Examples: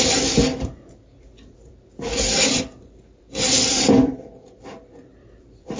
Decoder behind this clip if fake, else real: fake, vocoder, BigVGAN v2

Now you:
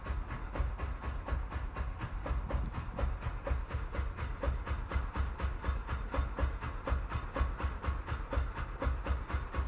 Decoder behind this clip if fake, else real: real